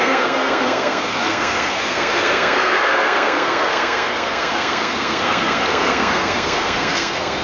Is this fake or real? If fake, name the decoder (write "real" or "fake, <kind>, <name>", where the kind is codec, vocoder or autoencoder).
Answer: fake, codec, SNAC